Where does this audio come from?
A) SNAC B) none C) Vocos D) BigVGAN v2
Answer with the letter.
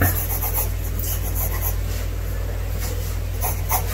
B